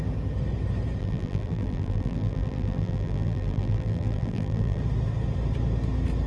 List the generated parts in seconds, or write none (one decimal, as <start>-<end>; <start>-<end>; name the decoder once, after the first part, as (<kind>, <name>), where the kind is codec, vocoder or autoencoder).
1.0-4.8 (vocoder, BigVGAN v2)